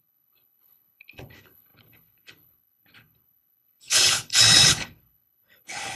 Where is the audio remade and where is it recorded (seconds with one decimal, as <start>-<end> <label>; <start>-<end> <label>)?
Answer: 0.0-6.0 remade